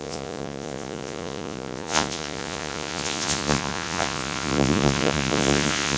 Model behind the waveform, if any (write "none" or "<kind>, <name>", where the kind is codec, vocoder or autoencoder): vocoder, Vocos